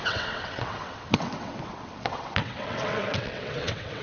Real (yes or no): no